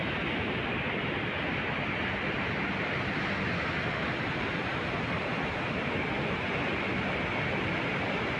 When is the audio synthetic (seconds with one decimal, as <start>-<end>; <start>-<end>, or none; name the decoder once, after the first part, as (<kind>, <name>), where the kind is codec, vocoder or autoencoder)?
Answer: none